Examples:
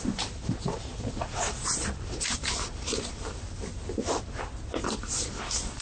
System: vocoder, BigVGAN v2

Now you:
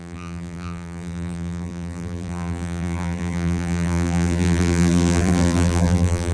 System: vocoder, BigVGAN v2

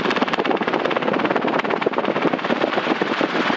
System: vocoder, BigVGAN v2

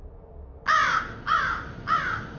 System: none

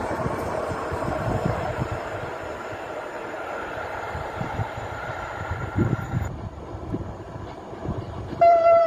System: vocoder, BigVGAN v2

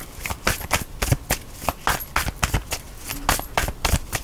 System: none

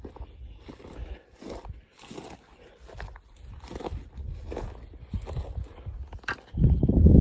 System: none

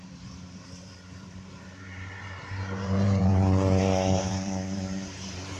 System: vocoder, BigVGAN v2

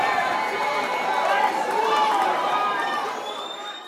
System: vocoder, BigVGAN v2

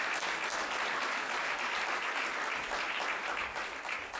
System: none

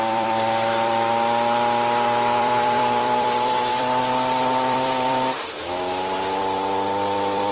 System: vocoder, BigVGAN v2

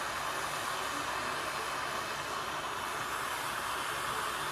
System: none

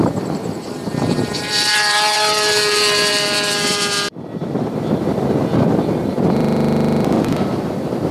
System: vocoder, BigVGAN v2